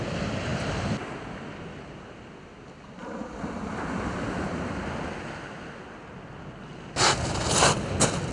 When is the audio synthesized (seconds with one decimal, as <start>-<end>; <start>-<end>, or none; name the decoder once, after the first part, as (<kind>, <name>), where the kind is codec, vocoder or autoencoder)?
none